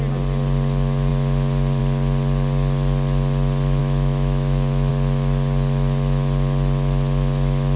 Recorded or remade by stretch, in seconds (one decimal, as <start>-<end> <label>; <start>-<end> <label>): 0.0-3.8 recorded; 3.8-4.9 remade; 4.9-7.8 recorded